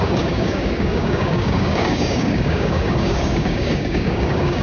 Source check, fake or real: fake